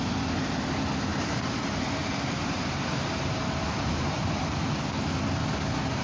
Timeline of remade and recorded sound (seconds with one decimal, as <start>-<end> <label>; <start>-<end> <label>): 0.0-1.1 recorded; 1.1-4.7 remade; 4.7-6.0 recorded